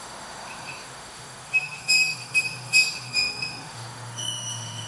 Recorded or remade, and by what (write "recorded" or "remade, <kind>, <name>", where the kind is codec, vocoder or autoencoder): remade, autoencoder, DAC-VAE